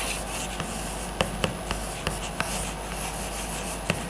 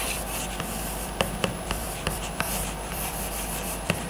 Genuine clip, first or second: first